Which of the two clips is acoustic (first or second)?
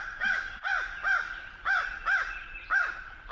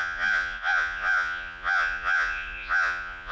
first